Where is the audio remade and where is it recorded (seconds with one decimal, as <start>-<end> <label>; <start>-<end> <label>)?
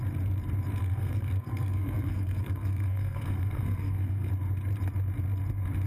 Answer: 0.0-0.8 recorded; 0.8-4.3 remade; 4.3-5.9 recorded